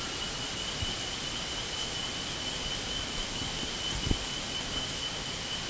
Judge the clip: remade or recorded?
recorded